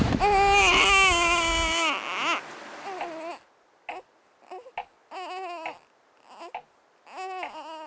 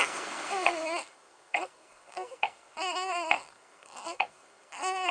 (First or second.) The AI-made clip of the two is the second